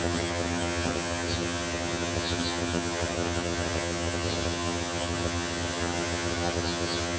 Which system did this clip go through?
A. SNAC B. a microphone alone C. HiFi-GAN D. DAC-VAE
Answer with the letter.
C